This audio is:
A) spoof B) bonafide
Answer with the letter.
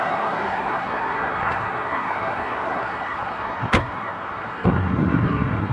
A